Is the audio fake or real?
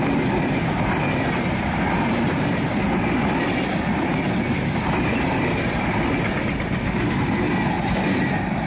real